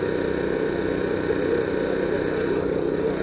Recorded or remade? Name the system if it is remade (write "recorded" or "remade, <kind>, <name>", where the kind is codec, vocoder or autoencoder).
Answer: recorded